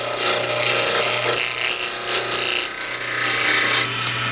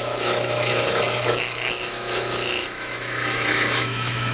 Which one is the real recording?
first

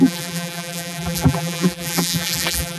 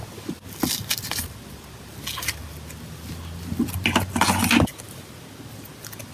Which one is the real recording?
second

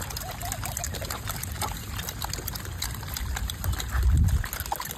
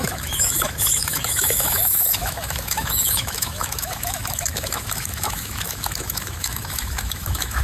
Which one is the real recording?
first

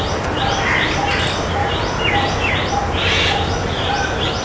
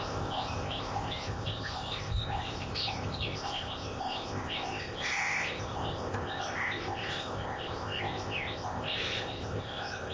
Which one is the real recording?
first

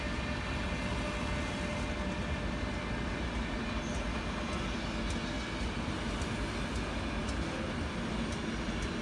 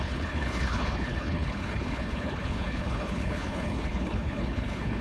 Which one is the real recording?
first